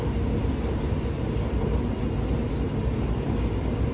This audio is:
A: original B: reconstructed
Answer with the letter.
A